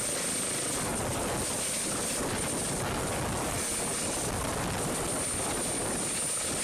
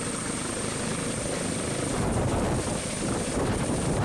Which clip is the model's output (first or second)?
second